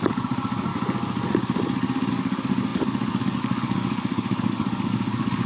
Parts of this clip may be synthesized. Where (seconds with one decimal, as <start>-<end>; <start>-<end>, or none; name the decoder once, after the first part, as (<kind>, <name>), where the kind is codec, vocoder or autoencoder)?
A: 0.0-0.7 (codec, DAC); 2.1-5.5